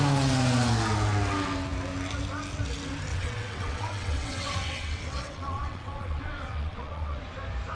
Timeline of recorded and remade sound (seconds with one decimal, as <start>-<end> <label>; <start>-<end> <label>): 0.0-3.1 recorded; 3.1-7.2 remade; 7.2-7.7 recorded